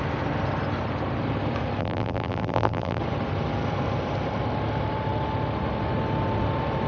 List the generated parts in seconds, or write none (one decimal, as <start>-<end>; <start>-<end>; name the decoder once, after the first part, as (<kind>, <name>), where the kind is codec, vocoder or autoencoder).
1.8-3.0 (vocoder, BigVGAN v2)